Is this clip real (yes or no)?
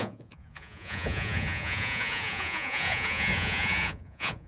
no